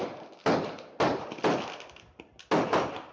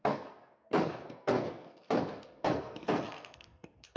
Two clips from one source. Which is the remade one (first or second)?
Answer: second